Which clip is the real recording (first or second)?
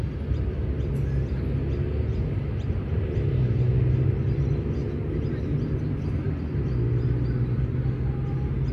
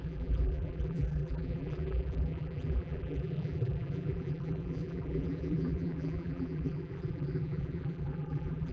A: first